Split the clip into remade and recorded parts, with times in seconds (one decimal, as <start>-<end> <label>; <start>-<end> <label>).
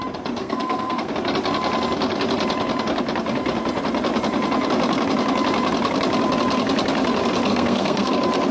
0.0-0.4 recorded; 0.4-1.1 remade; 1.1-7.5 recorded; 7.5-8.1 remade; 8.1-8.5 recorded